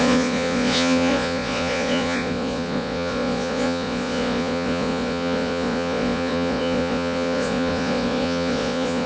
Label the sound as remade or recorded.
remade